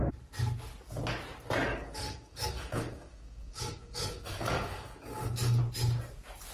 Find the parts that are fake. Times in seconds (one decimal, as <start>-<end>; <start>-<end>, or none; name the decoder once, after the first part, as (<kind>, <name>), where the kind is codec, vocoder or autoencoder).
1.7-5.6 (codec, DAC)